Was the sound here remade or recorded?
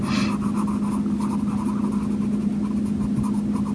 recorded